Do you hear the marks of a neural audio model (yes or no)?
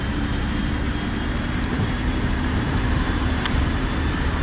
yes